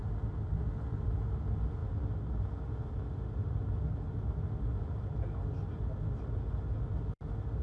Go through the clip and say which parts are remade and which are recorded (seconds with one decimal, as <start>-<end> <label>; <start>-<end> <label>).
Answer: 0.0-7.6 recorded